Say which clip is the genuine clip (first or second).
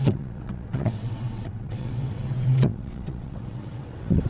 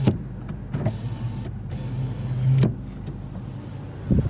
second